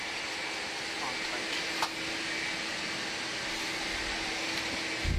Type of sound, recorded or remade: recorded